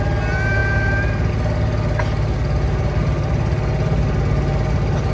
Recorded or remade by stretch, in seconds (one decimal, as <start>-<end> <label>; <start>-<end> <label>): 0.0-5.1 recorded